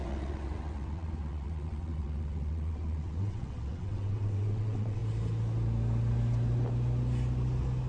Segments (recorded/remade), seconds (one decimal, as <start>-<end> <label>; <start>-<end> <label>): 0.0-5.0 remade; 5.0-7.9 recorded